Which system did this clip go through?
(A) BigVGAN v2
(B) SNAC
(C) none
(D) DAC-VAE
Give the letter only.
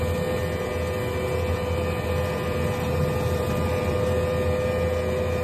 C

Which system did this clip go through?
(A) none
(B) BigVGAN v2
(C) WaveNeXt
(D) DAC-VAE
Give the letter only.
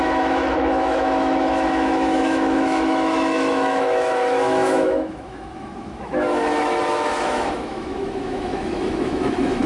D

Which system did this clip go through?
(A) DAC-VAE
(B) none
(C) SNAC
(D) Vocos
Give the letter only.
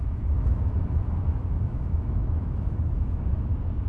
A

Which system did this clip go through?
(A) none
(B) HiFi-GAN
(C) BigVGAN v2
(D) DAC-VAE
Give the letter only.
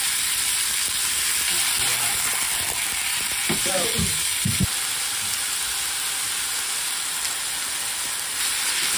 A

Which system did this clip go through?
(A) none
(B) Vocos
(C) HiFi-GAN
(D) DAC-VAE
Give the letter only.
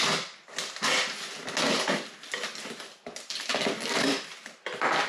A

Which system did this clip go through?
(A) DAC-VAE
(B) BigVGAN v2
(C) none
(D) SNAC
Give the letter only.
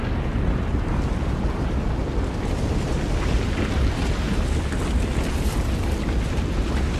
C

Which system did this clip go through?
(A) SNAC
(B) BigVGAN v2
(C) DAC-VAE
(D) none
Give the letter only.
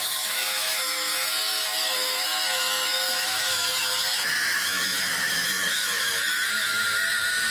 C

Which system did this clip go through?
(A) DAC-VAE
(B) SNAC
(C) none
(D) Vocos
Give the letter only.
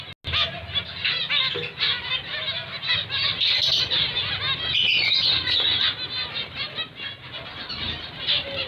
C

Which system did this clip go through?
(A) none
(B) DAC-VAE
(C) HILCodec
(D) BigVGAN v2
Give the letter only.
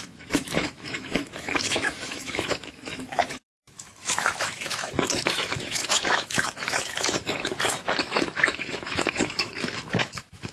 B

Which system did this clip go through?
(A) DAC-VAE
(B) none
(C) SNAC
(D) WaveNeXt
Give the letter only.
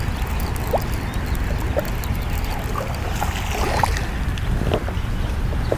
B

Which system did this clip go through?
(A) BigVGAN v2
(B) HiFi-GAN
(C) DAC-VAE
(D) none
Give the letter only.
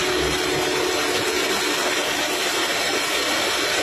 D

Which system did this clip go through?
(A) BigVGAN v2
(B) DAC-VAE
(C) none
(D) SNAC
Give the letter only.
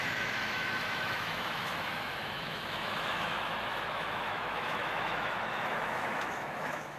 B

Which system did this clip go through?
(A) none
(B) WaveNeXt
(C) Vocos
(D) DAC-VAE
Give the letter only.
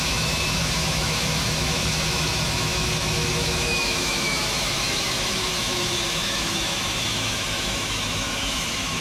D